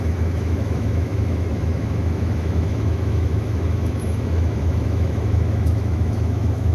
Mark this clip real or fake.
fake